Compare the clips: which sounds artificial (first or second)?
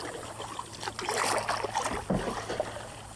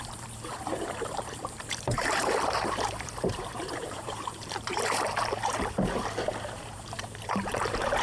second